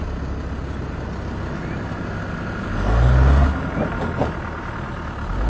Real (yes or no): yes